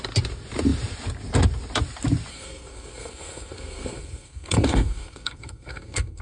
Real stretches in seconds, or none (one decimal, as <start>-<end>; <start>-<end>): 0.0-2.3